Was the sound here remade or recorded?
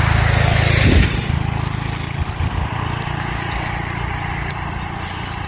recorded